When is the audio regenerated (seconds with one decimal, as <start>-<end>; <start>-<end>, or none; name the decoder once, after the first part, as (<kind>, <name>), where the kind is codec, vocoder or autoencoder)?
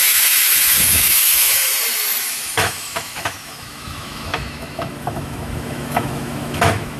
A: 0.0-1.7 (autoencoder, DAC-VAE); 2.2-7.0